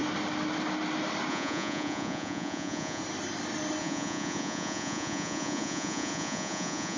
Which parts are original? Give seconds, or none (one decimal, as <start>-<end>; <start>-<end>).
0.0-1.3; 3.0-3.8